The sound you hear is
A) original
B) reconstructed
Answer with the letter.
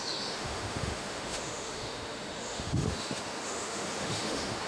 B